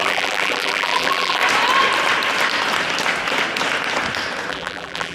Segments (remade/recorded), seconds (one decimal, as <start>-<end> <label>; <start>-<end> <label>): 0.0-1.4 remade; 1.4-4.5 recorded; 4.5-5.1 remade